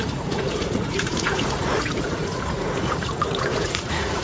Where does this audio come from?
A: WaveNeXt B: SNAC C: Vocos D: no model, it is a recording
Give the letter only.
C